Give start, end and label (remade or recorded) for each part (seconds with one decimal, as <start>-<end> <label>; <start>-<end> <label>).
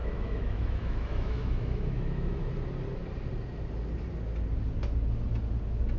0.0-2.5 remade; 2.5-6.0 recorded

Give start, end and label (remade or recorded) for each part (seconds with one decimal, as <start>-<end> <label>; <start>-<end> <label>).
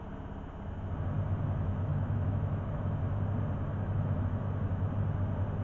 0.0-1.9 recorded; 1.9-3.0 remade; 3.0-3.7 recorded; 3.7-4.4 remade; 4.4-5.6 recorded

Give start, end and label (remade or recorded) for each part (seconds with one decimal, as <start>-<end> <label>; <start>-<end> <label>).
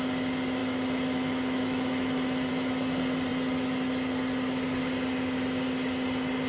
0.0-0.6 recorded; 0.6-2.5 remade; 2.5-6.5 recorded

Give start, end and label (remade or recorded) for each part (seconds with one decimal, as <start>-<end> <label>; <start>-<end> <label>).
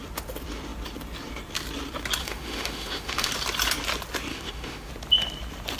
0.0-2.2 recorded; 2.2-3.3 remade; 3.3-4.3 recorded; 4.3-4.9 remade; 4.9-5.8 recorded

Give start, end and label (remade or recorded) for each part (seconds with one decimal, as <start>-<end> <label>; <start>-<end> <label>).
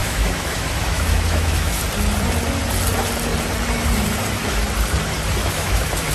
0.0-1.8 remade; 1.8-5.4 recorded; 5.4-6.1 remade